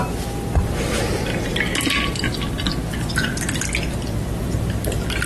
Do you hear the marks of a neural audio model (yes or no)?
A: no